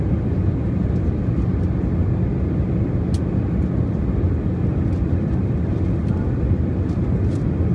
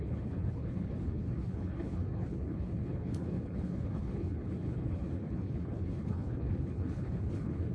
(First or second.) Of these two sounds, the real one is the first